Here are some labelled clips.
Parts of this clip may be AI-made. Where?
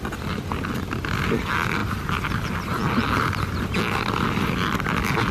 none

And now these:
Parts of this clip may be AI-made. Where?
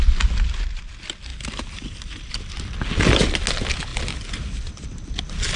1.3-2.3 (vocoder, BigVGAN v2)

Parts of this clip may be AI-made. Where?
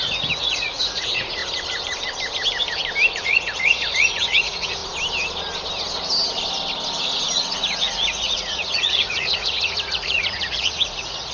0.0-1.4 (vocoder, Vocos); 3.2-4.8; 7.0-11.3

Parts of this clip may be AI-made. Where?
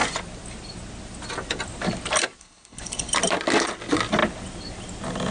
2.4-3.1 (codec, HILCodec)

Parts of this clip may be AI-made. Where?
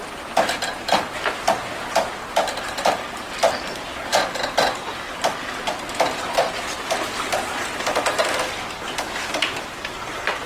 none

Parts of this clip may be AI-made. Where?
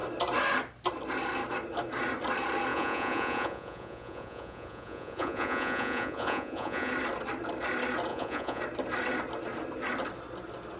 2.7-6.9 (vocoder, Vocos); 8.1-8.6